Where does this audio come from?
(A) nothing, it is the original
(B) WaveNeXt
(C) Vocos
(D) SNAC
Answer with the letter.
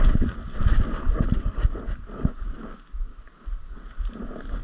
A